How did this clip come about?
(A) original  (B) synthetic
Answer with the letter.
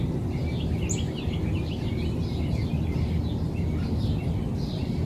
A